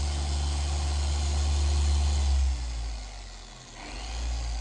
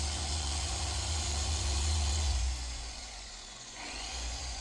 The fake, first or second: second